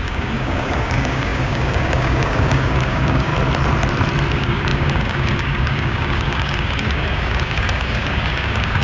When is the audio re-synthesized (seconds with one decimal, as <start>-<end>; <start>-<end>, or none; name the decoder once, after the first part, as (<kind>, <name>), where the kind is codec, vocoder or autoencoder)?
0.0-3.3 (codec, DAC); 4.3-8.8